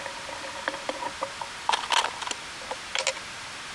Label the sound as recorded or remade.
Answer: recorded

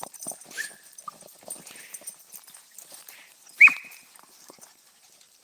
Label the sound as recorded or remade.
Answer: remade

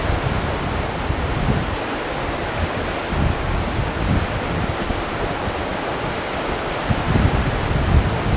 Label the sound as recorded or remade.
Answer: recorded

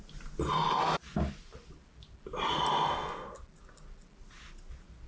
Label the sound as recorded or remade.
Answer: recorded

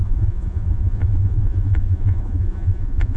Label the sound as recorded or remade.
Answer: remade